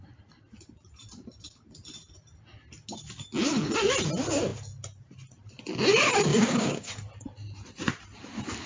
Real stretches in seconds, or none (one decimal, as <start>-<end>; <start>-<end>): 0.0-6.3; 6.9-8.7